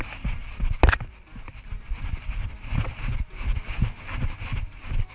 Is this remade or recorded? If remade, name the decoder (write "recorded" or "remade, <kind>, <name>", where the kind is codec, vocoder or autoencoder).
recorded